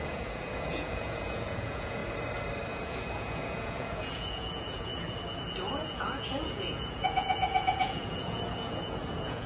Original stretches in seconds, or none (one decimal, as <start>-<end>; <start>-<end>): 2.0-2.7; 4.9-5.7